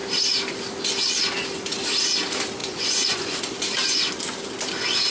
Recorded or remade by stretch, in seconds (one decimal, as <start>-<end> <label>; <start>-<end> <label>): 0.0-2.6 recorded; 2.6-3.4 remade; 3.4-5.1 recorded